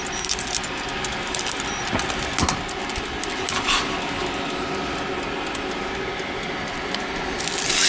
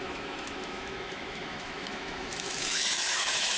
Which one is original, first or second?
first